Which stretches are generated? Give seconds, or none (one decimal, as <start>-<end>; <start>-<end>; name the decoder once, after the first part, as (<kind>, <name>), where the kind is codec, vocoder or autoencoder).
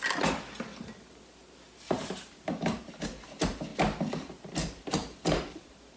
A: 1.4-2.3 (vocoder, BigVGAN v2)